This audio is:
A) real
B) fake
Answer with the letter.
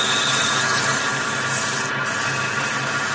A